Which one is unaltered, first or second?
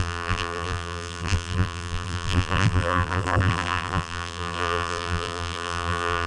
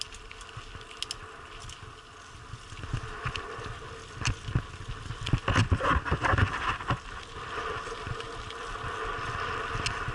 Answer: second